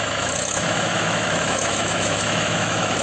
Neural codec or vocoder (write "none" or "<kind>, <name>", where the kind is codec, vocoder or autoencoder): autoencoder, DAC-VAE